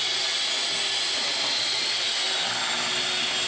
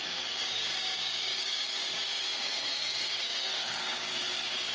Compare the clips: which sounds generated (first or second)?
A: second